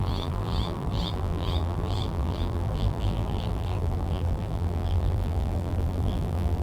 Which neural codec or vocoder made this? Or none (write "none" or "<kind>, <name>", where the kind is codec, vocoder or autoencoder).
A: vocoder, BigVGAN v2